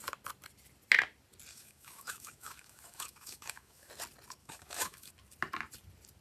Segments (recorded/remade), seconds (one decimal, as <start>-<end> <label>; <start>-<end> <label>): 0.0-1.5 recorded; 1.5-3.9 remade; 3.9-4.4 recorded; 4.4-5.1 remade; 5.1-6.2 recorded